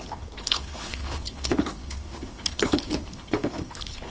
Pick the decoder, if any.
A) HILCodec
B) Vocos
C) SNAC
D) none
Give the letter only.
A